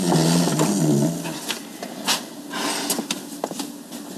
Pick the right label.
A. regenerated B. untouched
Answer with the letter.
B